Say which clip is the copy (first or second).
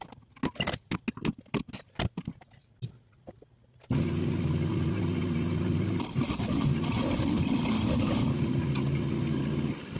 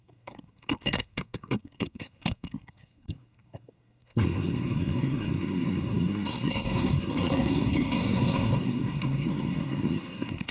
second